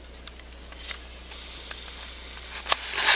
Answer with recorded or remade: recorded